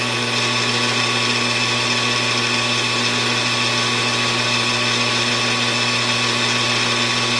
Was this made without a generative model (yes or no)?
yes